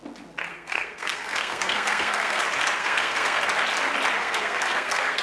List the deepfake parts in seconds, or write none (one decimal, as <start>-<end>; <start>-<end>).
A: 0.5-2.4; 2.8-3.4; 4.2-5.2